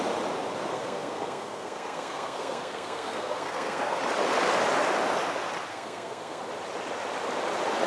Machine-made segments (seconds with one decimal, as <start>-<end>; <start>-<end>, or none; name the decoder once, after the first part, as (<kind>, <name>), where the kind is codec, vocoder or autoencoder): 0.7-4.0 (codec, SNAC); 5.7-6.4